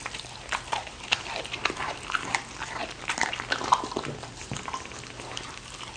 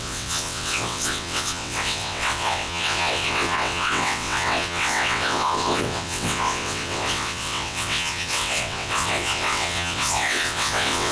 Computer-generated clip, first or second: second